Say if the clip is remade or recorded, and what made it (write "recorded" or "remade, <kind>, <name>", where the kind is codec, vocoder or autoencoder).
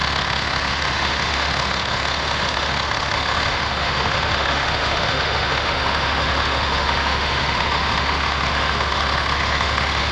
remade, autoencoder, DAC-VAE